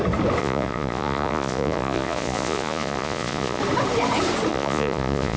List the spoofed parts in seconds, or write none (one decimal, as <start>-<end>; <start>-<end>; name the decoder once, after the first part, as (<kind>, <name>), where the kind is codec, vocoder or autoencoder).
0.4-3.6 (vocoder, Vocos); 4.5-5.4